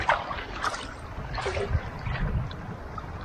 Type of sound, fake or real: real